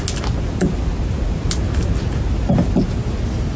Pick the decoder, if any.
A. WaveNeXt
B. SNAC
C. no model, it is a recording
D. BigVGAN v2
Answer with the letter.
C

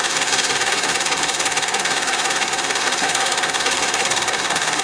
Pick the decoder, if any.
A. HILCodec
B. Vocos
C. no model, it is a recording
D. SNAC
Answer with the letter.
D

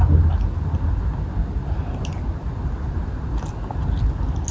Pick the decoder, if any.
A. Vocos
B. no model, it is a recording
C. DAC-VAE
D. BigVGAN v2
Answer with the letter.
B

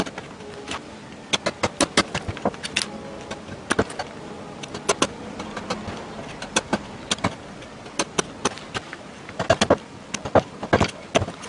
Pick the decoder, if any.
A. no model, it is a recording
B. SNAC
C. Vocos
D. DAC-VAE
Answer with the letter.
A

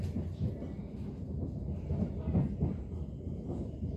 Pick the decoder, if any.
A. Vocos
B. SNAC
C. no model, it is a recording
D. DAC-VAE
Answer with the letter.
C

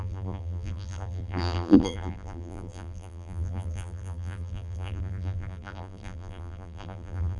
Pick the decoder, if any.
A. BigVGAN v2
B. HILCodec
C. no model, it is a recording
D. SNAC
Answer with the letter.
A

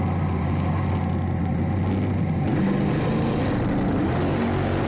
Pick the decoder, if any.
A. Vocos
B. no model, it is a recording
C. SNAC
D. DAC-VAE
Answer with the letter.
B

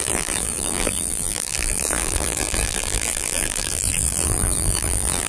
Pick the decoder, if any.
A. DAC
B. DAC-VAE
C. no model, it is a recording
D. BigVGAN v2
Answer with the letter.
D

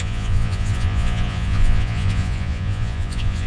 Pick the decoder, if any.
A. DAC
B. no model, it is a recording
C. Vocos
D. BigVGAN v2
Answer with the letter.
C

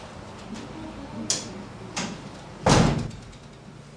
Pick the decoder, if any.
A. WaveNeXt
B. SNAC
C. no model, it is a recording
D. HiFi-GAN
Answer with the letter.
C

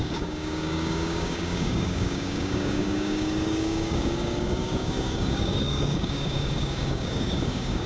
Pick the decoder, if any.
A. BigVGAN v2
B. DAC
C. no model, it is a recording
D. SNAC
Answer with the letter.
B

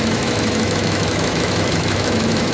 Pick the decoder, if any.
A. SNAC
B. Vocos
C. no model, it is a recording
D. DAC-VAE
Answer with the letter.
D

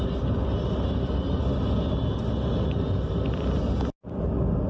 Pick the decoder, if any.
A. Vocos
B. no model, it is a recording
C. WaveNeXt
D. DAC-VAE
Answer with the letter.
B